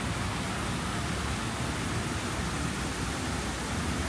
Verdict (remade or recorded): recorded